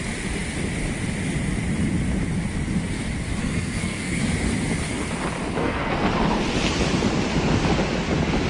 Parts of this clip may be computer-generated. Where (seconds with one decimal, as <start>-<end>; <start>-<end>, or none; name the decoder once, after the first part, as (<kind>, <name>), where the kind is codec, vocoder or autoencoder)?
3.4-4.2 (codec, SNAC); 5.6-6.1